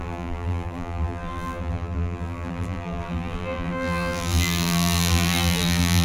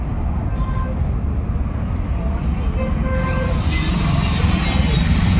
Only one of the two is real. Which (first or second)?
second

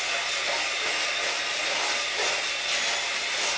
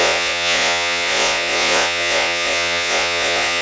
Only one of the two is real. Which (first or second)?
first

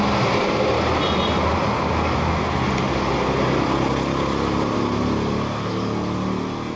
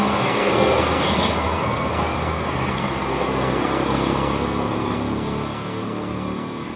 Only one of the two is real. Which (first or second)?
first